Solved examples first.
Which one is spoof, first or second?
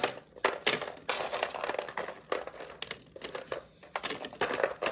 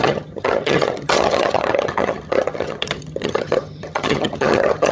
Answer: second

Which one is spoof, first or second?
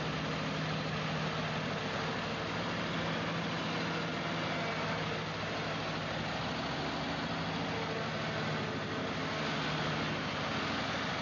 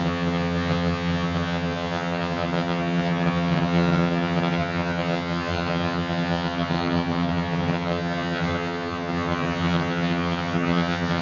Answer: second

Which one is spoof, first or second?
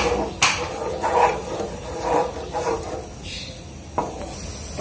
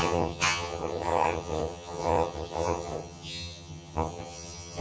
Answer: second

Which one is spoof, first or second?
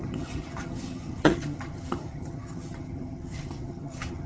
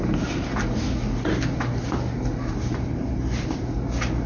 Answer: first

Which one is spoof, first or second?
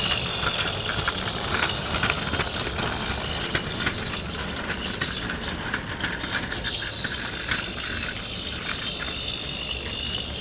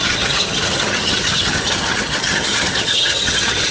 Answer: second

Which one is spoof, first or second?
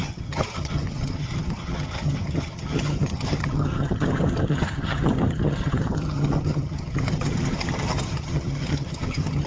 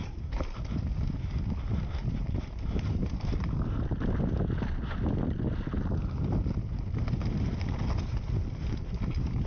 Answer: first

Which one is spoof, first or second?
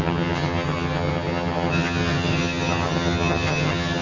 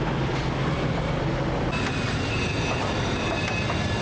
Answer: first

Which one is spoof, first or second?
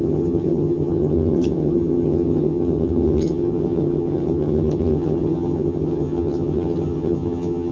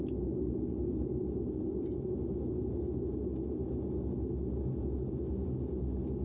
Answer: first